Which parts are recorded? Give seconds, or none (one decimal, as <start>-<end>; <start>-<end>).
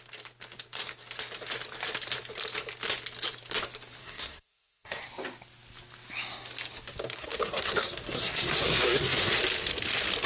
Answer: 0.0-4.0; 5.0-7.2; 9.4-10.3